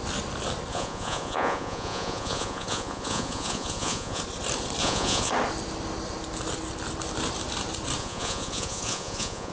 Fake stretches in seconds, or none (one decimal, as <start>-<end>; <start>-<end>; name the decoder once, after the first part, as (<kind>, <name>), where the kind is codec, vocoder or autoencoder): 0.7-4.2 (vocoder, Vocos); 4.8-5.3; 8.0-9.5